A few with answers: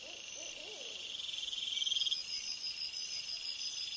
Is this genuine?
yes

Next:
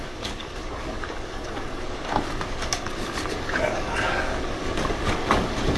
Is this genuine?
no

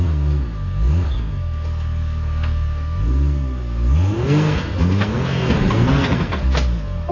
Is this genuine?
no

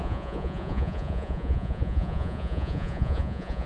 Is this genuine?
no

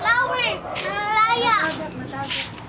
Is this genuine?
yes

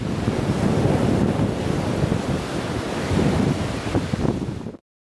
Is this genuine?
yes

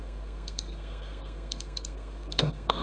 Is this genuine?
no